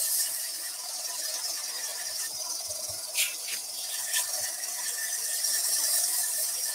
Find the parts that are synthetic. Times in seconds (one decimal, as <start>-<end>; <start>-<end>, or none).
0.0-6.7